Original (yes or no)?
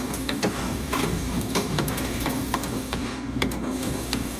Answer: no